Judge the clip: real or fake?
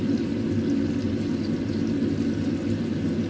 real